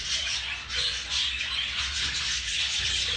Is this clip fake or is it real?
fake